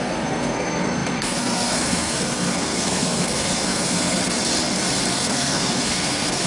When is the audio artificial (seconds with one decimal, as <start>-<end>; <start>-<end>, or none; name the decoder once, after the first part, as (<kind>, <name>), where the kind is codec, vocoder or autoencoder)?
0.0-4.2 (codec, SNAC); 5.1-6.5